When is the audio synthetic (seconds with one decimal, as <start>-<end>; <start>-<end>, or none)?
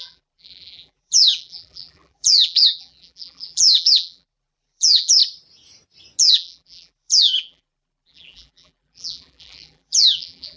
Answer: 0.0-5.2; 6.2-10.6